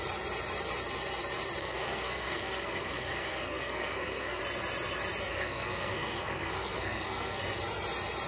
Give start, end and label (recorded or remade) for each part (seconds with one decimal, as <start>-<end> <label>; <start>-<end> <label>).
0.0-1.6 recorded; 1.6-4.4 remade; 4.4-5.3 recorded; 5.3-7.4 remade; 7.4-8.3 recorded